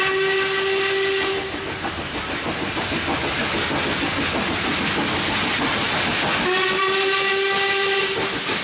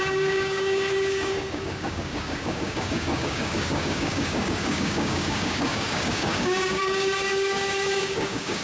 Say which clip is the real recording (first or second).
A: first